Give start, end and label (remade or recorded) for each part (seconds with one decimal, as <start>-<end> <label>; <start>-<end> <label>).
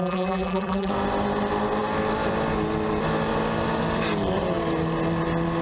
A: 0.0-0.9 remade; 0.9-5.6 recorded